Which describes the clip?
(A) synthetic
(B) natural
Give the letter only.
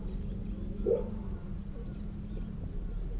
B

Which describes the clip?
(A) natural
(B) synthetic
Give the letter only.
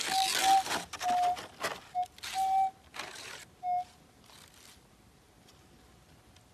A